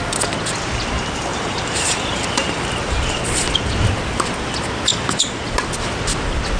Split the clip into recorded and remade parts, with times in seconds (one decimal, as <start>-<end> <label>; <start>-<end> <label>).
0.0-1.3 recorded; 1.3-3.2 remade; 3.2-4.9 recorded; 4.9-5.4 remade; 5.4-6.6 recorded